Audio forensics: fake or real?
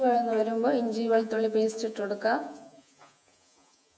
fake